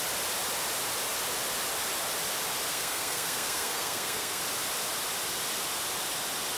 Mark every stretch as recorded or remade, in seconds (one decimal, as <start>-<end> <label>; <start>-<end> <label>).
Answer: 0.0-2.7 recorded; 2.7-4.4 remade; 4.4-6.6 recorded